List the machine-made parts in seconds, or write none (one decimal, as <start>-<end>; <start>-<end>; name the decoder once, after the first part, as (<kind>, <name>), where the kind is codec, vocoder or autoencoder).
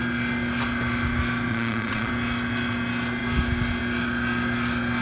1.5-2.1 (vocoder, Vocos)